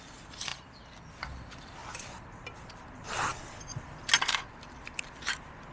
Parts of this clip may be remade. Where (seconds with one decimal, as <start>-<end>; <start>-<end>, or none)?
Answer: none

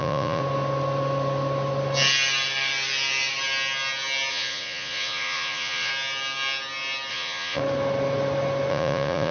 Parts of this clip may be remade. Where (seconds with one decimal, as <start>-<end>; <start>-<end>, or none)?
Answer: 0.0-0.4; 4.3-5.9; 7.1-7.6; 8.7-9.3

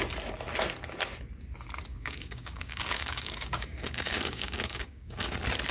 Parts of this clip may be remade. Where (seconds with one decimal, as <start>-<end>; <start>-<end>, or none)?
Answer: 1.9-5.3

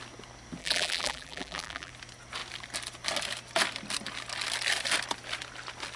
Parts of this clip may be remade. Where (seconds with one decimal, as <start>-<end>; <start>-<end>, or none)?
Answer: 0.6-1.9